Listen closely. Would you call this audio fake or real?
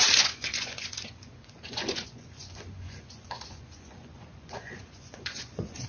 fake